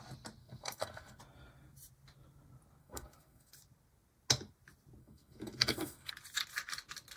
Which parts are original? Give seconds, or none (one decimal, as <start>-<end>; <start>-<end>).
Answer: 0.0-0.4; 1.2-2.8; 3.5-5.0; 6.1-7.2